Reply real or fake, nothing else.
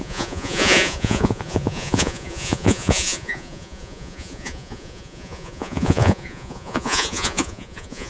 fake